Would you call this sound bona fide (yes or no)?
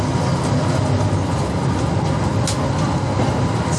yes